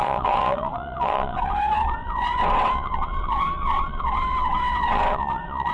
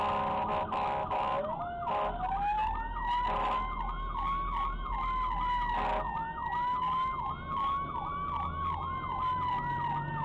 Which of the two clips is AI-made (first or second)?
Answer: first